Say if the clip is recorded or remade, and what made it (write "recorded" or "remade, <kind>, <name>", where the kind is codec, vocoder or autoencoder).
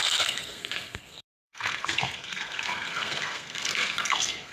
remade, codec, SNAC